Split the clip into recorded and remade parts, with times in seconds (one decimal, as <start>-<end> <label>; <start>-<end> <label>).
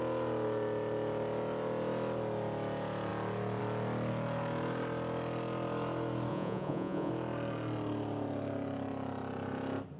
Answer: 0.0-6.3 recorded; 6.3-7.1 remade; 7.1-10.0 recorded